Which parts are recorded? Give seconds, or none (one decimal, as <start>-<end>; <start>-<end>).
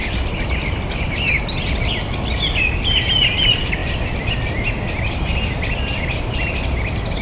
none